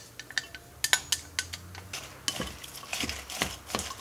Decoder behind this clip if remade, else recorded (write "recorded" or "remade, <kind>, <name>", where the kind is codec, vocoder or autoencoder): recorded